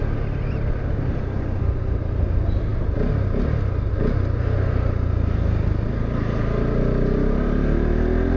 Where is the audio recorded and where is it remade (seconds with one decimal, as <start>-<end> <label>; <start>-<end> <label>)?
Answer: 0.0-8.4 recorded